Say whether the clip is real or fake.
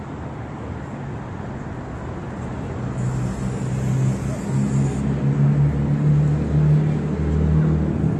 real